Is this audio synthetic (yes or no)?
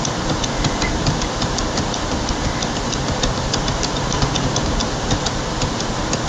no